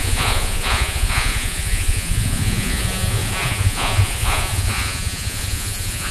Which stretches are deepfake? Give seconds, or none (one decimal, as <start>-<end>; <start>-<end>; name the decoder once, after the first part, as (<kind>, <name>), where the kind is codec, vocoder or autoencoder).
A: 0.0-6.1 (vocoder, Vocos)